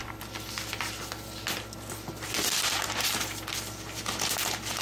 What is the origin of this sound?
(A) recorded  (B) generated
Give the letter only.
A